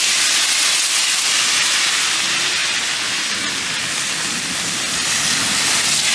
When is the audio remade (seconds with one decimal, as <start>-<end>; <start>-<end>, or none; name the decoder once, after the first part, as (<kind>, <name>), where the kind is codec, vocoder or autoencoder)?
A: none